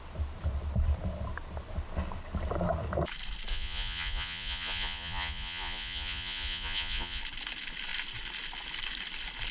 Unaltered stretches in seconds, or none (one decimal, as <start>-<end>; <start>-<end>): 0.0-3.5; 7.2-9.5